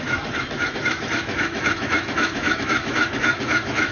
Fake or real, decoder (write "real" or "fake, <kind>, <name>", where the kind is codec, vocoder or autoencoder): fake, autoencoder, DAC-VAE